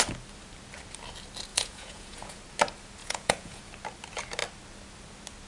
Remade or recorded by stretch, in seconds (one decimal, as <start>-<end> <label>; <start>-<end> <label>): 0.0-1.5 recorded; 1.5-2.4 remade; 2.4-3.0 recorded; 3.0-3.6 remade; 3.6-5.5 recorded